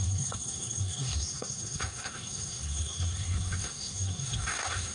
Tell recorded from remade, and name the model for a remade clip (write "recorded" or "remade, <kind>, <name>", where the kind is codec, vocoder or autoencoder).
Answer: remade, codec, SNAC